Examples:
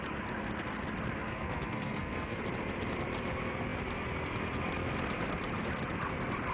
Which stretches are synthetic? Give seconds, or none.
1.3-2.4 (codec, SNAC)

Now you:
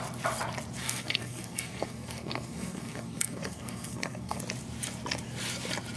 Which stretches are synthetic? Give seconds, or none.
0.8-4.4 (codec, SNAC)

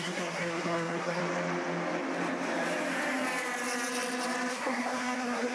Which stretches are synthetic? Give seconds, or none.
0.0-1.2 (codec, SNAC); 4.5-5.5

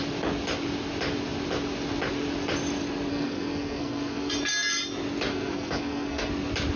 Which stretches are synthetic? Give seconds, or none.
3.1-4.3 (codec, SNAC); 5.3-6.3

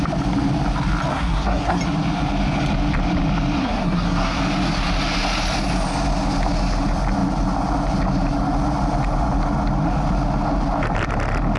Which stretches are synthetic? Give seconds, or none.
1.1-1.8 (codec, SNAC); 3.6-4.4